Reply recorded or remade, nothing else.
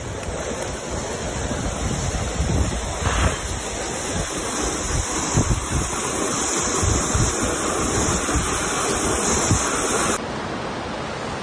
recorded